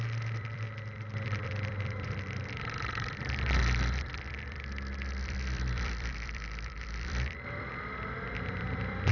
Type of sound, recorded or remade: remade